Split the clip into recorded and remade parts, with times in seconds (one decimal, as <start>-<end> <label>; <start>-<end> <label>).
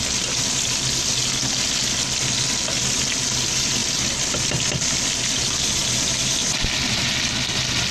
0.0-7.9 recorded